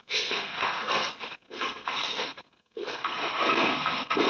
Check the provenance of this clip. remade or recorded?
remade